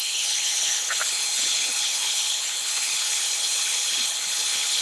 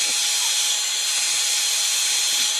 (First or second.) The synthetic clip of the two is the first